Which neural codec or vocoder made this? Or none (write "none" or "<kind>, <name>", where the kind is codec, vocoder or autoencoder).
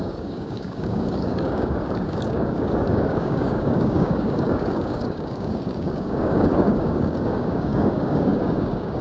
codec, DAC